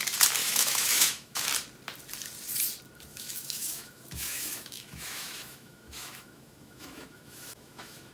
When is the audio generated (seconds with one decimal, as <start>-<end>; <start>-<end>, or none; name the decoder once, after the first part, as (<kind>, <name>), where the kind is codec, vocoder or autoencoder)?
0.4-1.5 (autoencoder, DAC-VAE); 3.1-8.1

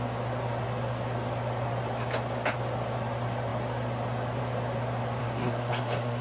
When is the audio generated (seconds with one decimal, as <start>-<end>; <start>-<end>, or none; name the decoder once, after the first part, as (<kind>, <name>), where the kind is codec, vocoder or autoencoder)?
5.2-6.2 (codec, SNAC)

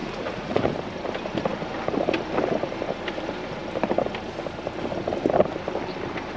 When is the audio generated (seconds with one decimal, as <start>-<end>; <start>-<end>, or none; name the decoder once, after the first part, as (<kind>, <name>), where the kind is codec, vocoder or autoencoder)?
0.0-0.7 (vocoder, Vocos)

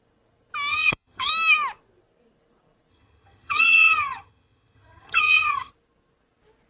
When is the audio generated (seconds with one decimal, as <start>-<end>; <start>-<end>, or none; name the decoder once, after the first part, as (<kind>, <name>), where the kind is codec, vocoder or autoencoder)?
0.7-1.3 (vocoder, HiFi-GAN); 2.9-5.7

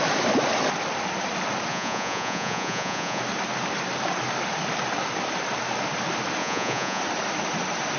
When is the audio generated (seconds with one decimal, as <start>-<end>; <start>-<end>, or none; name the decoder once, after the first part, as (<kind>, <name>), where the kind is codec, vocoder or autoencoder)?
1.7-3.2 (vocoder, Vocos); 6.4-7.0

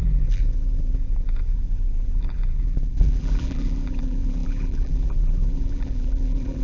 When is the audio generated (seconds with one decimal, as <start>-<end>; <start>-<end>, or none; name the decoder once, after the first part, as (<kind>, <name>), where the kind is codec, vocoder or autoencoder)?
0.0-6.6 (vocoder, BigVGAN v2)

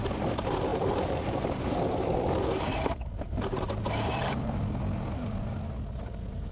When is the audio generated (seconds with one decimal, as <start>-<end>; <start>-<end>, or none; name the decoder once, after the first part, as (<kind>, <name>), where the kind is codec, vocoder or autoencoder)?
0.7-4.6 (vocoder, BigVGAN v2)